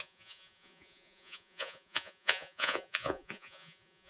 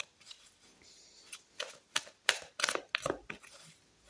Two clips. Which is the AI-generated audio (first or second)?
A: first